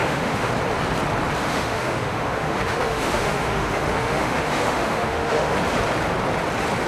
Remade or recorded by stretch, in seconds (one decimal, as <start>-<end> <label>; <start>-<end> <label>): 0.0-0.5 remade; 0.5-1.4 recorded; 1.4-5.5 remade; 5.5-6.9 recorded